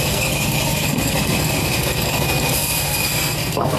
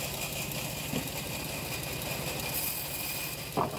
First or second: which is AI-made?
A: first